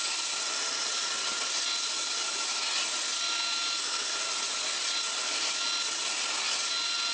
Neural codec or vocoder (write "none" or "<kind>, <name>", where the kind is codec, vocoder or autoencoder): none